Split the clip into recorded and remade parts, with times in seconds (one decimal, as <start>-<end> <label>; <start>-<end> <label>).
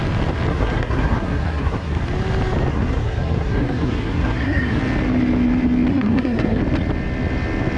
0.0-0.5 recorded; 0.5-2.0 remade; 2.0-2.7 recorded; 2.7-4.8 remade; 4.8-5.9 recorded; 5.9-6.6 remade; 6.6-7.8 recorded